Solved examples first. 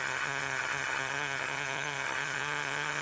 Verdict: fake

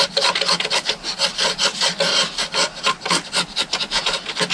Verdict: real